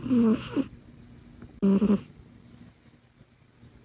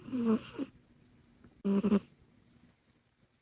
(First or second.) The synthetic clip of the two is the second